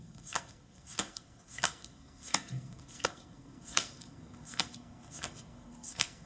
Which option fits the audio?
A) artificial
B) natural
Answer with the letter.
A